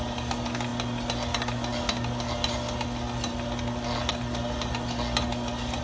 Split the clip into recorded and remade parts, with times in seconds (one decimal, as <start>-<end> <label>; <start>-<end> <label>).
0.0-5.8 recorded